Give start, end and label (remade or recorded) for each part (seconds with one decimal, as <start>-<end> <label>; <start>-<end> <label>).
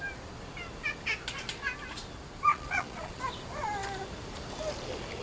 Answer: 0.0-2.5 recorded; 2.5-3.2 remade; 3.2-5.2 recorded